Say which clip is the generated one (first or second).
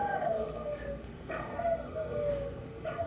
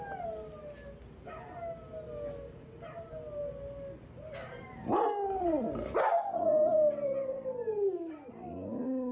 first